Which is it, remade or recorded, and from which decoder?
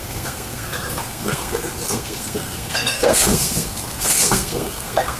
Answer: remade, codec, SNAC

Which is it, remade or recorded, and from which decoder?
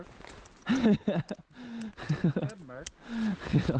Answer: recorded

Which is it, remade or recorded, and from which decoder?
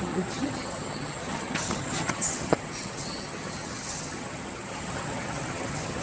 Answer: remade, vocoder, HiFi-GAN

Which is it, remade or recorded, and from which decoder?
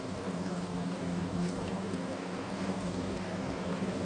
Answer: remade, codec, DAC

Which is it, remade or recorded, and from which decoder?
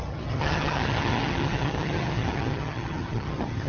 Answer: remade, vocoder, HiFi-GAN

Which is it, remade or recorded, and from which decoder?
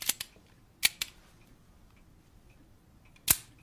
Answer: recorded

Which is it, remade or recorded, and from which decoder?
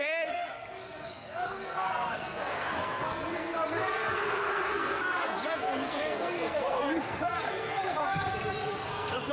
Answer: remade, codec, SNAC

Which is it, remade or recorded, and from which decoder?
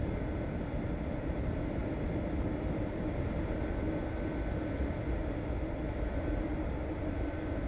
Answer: recorded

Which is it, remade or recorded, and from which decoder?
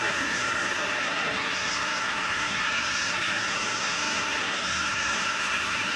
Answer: remade, codec, SNAC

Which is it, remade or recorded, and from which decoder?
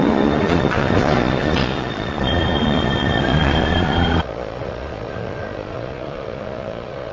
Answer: remade, vocoder, Vocos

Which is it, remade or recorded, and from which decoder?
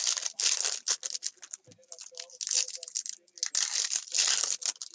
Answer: recorded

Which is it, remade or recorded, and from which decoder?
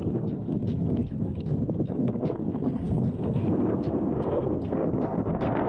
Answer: remade, codec, SNAC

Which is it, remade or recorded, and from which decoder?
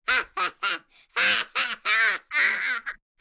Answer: recorded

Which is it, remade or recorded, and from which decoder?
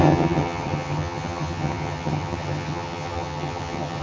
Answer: remade, vocoder, HiFi-GAN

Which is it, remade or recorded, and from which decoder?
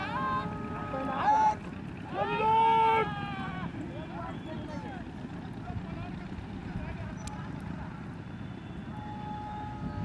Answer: recorded